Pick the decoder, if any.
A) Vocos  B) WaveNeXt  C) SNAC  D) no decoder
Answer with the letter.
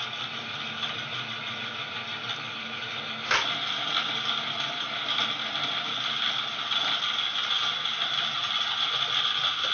D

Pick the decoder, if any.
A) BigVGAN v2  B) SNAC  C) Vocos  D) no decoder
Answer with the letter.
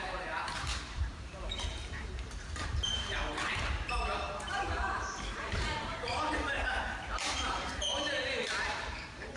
A